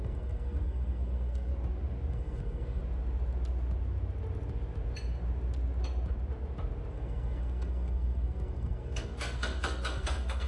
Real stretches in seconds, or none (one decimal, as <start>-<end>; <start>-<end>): 1.5-2.1; 2.8-6.9